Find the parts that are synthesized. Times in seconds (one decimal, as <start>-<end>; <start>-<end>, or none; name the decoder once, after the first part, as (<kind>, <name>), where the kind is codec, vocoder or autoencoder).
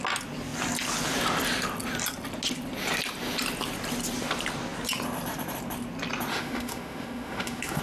6.3-7.8 (autoencoder, DAC-VAE)